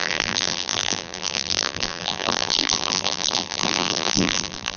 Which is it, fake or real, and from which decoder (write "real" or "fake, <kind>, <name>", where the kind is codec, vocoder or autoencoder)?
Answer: fake, vocoder, BigVGAN v2